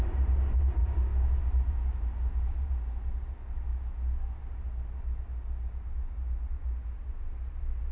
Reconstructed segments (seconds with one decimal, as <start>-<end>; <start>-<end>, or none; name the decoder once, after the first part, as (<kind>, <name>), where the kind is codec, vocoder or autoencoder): 0.8-1.3 (codec, DAC)